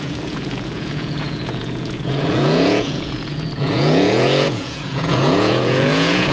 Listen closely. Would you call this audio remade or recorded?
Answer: remade